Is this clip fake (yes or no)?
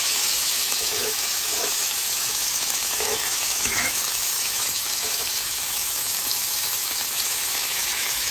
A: yes